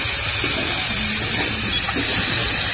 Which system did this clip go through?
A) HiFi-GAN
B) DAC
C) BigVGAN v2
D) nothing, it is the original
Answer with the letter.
D